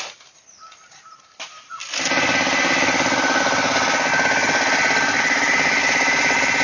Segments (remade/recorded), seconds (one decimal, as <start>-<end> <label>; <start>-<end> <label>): 0.0-1.8 remade; 1.8-3.4 recorded; 3.4-4.1 remade; 4.1-5.2 recorded; 5.2-6.6 remade